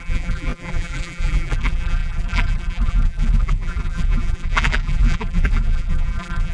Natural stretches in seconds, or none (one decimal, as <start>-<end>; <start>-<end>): none